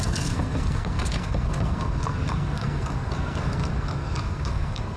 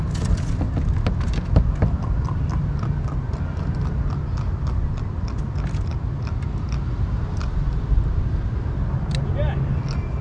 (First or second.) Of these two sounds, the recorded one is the second